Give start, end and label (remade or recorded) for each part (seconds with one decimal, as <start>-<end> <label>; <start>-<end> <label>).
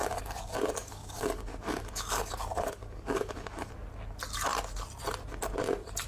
0.0-3.7 remade; 3.7-6.1 recorded